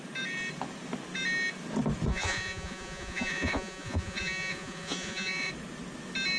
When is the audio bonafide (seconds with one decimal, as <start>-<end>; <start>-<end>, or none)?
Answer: 0.0-2.1; 5.5-6.4